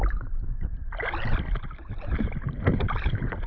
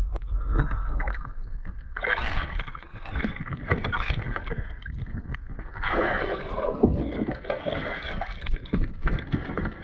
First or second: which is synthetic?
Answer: second